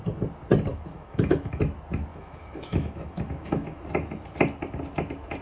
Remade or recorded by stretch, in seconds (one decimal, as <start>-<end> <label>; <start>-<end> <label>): 0.0-0.7 recorded; 0.7-1.6 remade; 1.6-2.1 recorded; 2.1-3.8 remade; 3.8-5.4 recorded